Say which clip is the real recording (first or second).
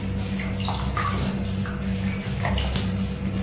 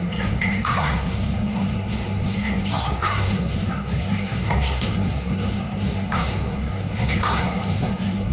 first